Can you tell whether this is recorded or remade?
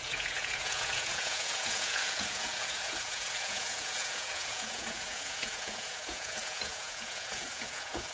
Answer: remade